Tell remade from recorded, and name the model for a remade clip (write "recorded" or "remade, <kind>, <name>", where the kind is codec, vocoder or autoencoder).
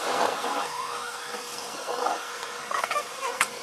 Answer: remade, codec, SNAC